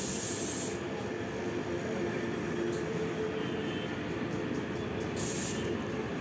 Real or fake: real